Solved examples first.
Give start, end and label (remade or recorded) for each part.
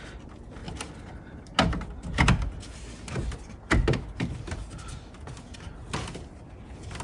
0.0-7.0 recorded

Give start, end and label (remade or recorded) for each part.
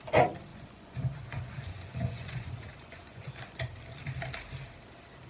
0.0-0.5 recorded; 0.5-3.6 remade; 3.6-5.3 recorded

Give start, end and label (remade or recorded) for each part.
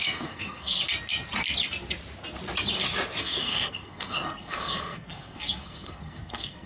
0.0-0.8 remade; 0.8-3.2 recorded; 3.2-6.7 remade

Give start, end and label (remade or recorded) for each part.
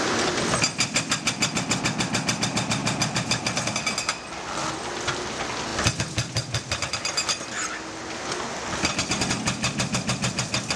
0.0-10.8 recorded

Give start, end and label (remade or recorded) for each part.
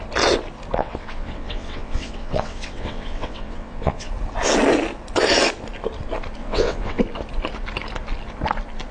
0.0-0.8 recorded; 0.8-4.1 remade; 4.1-6.4 recorded; 6.4-7.0 remade; 7.0-8.9 recorded